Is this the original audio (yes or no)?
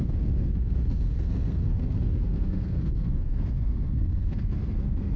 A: no